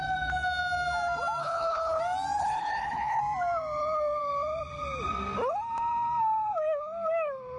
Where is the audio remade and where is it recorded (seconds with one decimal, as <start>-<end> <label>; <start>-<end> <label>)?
0.0-1.4 recorded; 1.4-2.0 remade; 2.0-2.4 recorded; 2.4-3.2 remade; 3.2-7.6 recorded